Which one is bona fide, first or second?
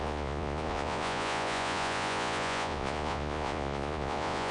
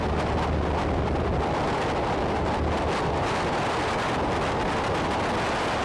second